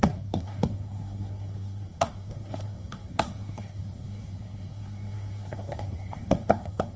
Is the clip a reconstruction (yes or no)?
yes